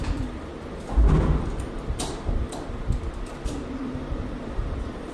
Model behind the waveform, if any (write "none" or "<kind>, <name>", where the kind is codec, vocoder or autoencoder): vocoder, BigVGAN v2